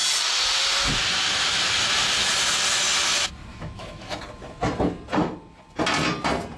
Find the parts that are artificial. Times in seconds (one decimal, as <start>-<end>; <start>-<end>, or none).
3.5-4.2